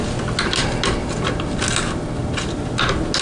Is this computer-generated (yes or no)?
no